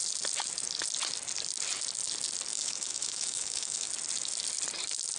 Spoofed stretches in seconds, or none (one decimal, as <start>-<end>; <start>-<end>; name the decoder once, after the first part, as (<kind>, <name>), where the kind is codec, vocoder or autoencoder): 2.5-3.9 (autoencoder, DAC-VAE)